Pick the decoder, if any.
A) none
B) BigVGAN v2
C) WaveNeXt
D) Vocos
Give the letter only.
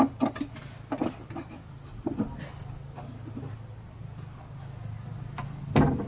A